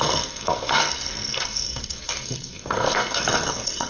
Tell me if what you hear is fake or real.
fake